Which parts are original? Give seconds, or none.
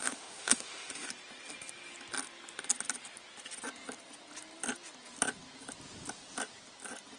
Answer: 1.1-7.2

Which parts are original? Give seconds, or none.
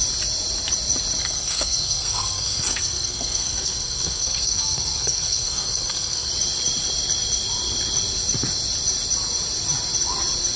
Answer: 0.0-1.2; 6.3-10.6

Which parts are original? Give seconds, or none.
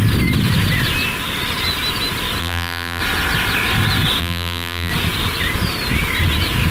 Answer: 0.0-2.4; 3.0-4.2; 4.9-6.7